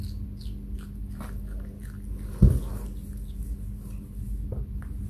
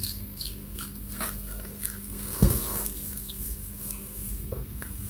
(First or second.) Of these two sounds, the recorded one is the first